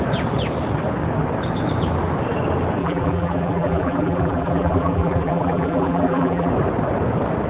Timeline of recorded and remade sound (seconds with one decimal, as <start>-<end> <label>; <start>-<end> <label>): 0.0-2.8 recorded; 2.8-6.5 remade; 6.5-7.5 recorded